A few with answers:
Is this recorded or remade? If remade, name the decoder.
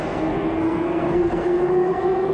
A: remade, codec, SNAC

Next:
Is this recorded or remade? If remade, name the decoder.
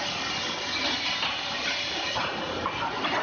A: recorded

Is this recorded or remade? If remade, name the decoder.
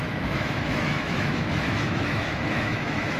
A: remade, autoencoder, DAC-VAE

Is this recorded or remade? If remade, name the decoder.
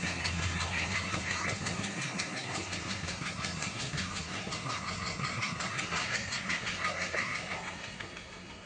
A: remade, codec, SNAC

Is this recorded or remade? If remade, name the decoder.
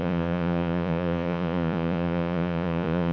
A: remade, vocoder, Vocos